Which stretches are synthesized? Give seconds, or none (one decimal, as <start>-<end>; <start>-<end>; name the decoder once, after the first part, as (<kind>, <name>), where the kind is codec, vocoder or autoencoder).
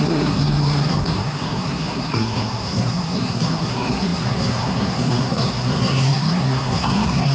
0.0-7.3 (codec, SNAC)